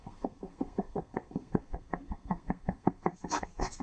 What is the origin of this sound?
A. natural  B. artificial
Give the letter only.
B